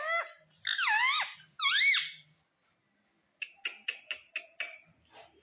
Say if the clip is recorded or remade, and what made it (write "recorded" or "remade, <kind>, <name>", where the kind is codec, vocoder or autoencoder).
recorded